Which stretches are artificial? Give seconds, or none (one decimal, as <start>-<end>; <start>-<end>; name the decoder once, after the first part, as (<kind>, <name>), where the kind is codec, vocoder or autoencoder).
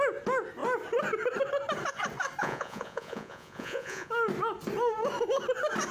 2.4-4.1 (vocoder, Vocos)